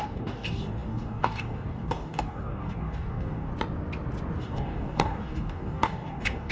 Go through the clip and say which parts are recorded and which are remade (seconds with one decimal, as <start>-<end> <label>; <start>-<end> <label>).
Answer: 0.0-3.5 remade; 3.5-4.4 recorded; 4.4-6.5 remade